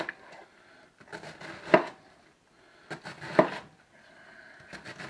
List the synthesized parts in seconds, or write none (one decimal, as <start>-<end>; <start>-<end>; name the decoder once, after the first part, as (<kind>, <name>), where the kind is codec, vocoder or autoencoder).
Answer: none